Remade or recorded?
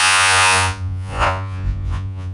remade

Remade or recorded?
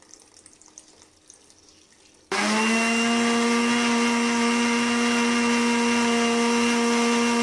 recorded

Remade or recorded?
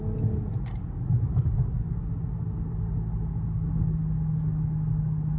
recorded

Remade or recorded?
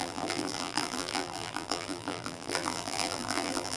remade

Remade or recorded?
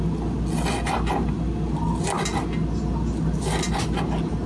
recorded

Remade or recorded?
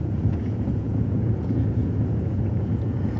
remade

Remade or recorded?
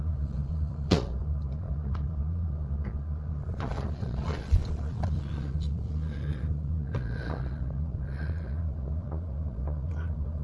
remade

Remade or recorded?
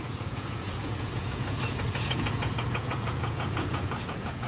remade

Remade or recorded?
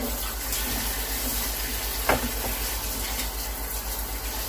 recorded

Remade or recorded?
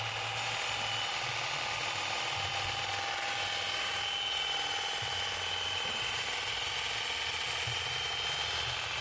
recorded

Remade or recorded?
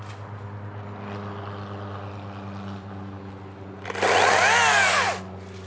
recorded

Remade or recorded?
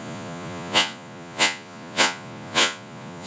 remade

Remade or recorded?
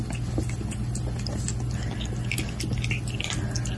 recorded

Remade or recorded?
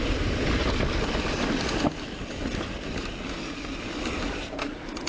recorded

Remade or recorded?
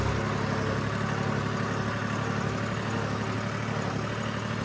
recorded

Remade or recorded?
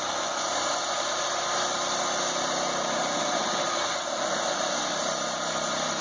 recorded